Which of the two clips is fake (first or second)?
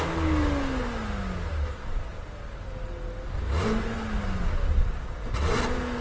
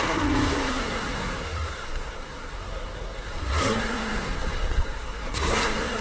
second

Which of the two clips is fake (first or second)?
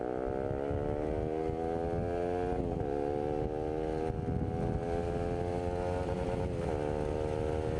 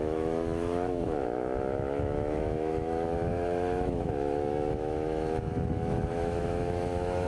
second